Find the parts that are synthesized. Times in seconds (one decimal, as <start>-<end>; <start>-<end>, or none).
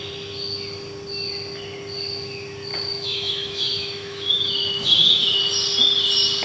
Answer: 2.7-5.4